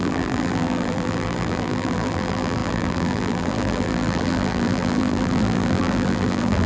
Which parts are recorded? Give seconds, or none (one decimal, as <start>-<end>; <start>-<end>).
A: none